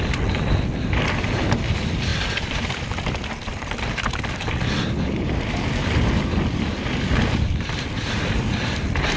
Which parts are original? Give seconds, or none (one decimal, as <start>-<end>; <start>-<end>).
none